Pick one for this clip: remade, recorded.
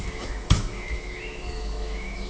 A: remade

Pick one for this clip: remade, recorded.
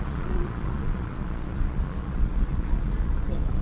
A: remade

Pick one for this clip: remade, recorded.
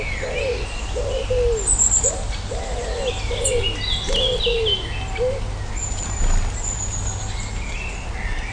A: recorded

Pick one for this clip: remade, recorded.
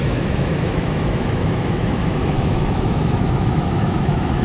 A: remade